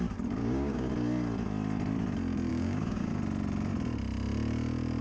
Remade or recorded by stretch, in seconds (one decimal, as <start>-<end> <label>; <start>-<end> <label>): 0.0-0.4 recorded; 0.4-0.9 remade; 0.9-2.5 recorded; 2.5-3.1 remade; 3.1-5.0 recorded